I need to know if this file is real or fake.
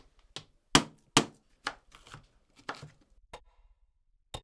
real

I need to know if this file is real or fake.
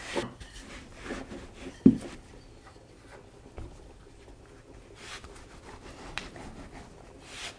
real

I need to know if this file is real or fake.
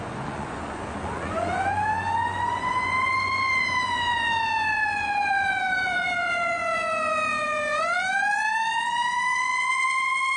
fake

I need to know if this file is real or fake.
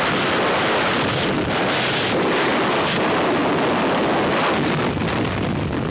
real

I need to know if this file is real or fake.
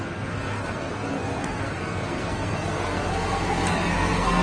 fake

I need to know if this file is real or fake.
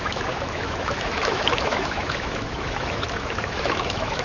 fake